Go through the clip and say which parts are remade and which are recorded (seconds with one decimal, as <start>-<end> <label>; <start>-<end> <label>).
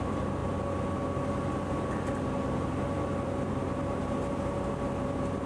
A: 0.0-5.5 recorded